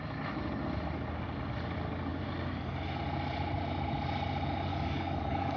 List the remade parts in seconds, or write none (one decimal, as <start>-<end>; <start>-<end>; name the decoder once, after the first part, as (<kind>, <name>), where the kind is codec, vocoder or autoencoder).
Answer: 4.7-5.6 (codec, DAC)